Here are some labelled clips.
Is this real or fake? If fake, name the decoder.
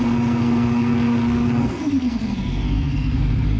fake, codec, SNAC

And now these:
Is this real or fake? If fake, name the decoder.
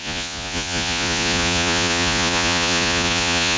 fake, vocoder, Vocos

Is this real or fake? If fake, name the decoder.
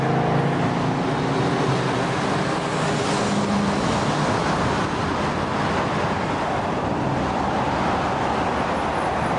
real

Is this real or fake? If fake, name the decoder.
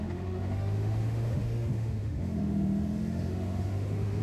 fake, autoencoder, DAC-VAE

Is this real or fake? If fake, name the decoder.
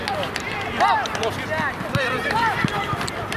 real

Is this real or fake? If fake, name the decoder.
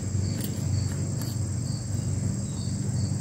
real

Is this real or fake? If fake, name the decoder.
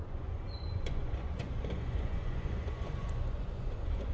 fake, vocoder, Vocos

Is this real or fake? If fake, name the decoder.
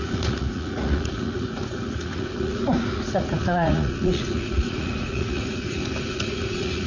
fake, vocoder, Vocos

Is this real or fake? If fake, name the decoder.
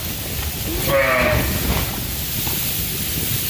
real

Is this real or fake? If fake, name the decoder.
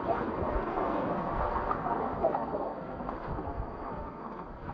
fake, codec, SNAC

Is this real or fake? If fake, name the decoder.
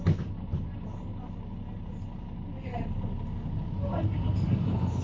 real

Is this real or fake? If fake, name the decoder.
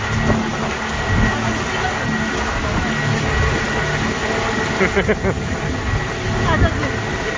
real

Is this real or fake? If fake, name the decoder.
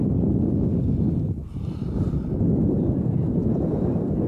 real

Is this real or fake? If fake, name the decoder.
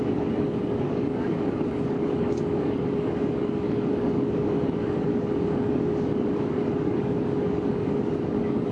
fake, codec, DAC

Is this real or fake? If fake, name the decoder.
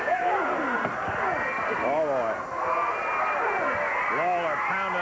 real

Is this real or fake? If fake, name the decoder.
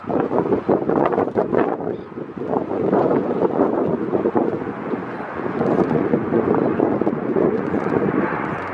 fake, vocoder, Vocos